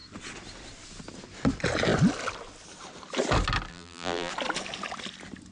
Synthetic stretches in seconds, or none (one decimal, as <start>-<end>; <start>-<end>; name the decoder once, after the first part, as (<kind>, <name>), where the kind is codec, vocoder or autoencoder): 3.7-4.3 (vocoder, BigVGAN v2)